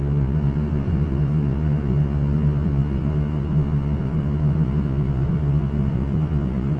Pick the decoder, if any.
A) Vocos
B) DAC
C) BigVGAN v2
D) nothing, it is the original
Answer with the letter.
A